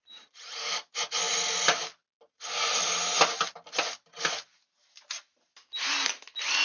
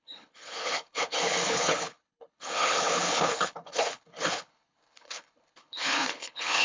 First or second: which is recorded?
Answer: first